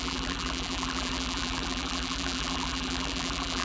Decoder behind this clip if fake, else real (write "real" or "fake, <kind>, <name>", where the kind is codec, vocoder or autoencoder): fake, vocoder, BigVGAN v2